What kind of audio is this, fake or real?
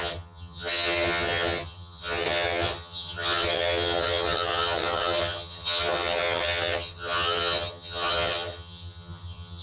fake